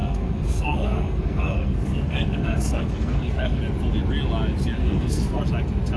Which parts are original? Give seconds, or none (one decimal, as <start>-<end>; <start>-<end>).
3.6-4.8; 5.4-6.0